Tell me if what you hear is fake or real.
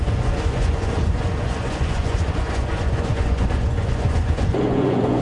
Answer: fake